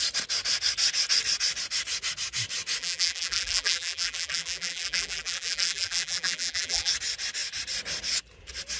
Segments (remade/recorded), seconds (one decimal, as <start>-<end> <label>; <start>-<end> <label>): 0.0-2.8 recorded; 2.8-6.9 remade; 6.9-8.8 recorded